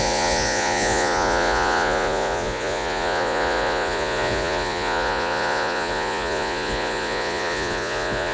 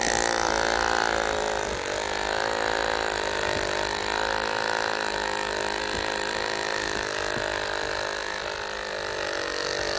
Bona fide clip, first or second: second